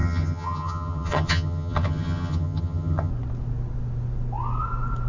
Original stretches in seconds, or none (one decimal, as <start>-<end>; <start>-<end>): 3.1-5.1